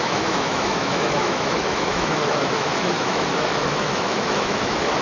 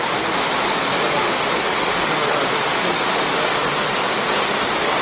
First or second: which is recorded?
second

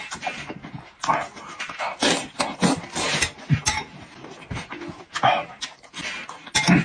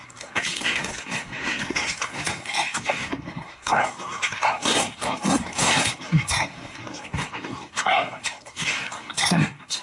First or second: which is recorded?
first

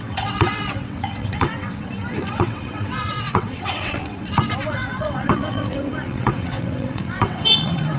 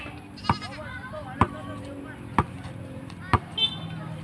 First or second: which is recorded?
second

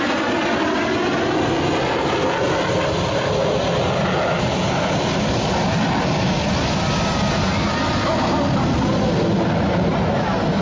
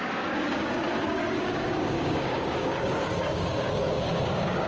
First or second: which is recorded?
first